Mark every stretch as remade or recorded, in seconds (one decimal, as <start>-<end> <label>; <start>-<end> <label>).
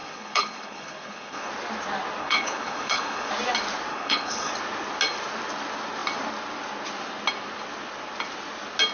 0.0-1.5 remade; 1.5-2.2 recorded; 2.2-3.3 remade; 3.3-3.9 recorded; 3.9-4.5 remade; 4.5-8.9 recorded